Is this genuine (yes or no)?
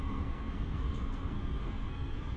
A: no